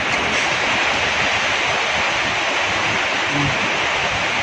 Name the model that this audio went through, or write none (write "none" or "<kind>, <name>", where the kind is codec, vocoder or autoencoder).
none